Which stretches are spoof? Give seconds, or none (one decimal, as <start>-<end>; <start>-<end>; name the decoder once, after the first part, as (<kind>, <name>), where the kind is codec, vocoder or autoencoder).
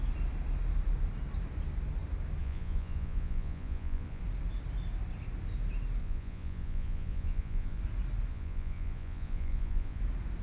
2.4-4.2 (vocoder, Vocos); 6.0-7.8; 8.3-10.0